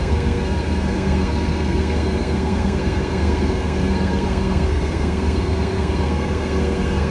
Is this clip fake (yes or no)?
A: yes